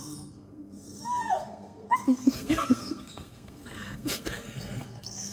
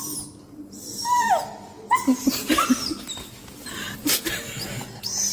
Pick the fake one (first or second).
first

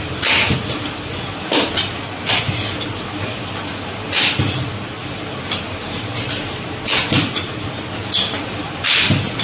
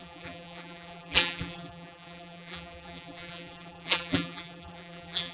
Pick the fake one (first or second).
second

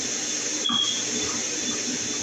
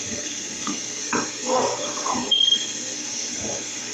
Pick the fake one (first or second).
second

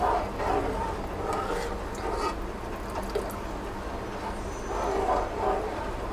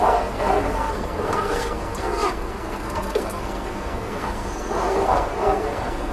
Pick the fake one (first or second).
second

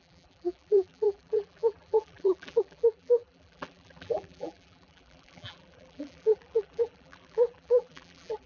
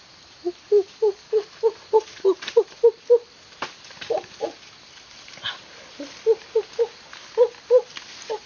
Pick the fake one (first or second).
first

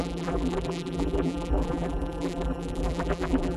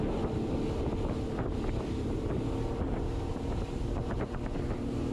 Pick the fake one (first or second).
first